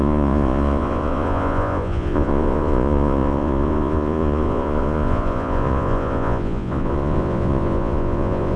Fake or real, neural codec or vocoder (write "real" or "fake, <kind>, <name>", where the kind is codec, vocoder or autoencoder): fake, vocoder, Vocos